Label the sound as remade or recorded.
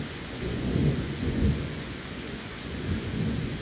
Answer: remade